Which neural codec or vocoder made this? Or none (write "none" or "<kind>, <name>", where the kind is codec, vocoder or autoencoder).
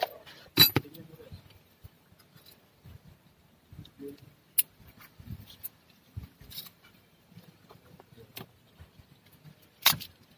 none